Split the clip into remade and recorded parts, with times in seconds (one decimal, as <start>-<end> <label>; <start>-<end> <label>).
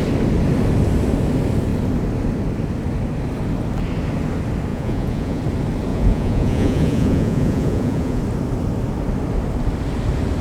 0.0-4.7 recorded; 4.7-5.4 remade; 5.4-5.9 recorded; 5.9-8.2 remade; 8.2-10.4 recorded